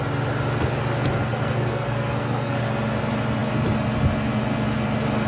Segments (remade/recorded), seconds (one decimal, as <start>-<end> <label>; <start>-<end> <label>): 0.0-1.3 recorded; 1.3-2.6 remade; 2.6-5.3 recorded